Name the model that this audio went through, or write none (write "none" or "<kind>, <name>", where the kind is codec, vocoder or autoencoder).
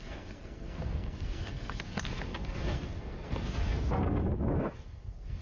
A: codec, SNAC